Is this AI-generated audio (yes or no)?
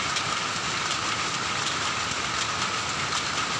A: no